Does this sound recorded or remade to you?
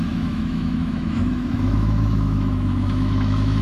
remade